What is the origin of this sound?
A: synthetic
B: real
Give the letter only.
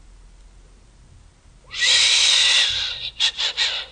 B